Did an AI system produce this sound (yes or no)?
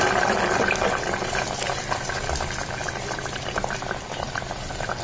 yes